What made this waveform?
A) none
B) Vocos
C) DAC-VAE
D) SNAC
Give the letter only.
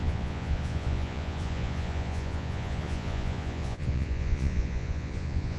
B